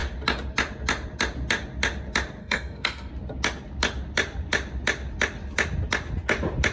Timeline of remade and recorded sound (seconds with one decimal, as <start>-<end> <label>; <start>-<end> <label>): 0.0-2.4 recorded; 2.4-3.1 remade; 3.1-6.7 recorded